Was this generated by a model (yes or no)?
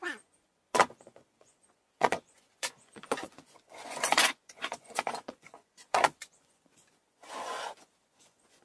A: yes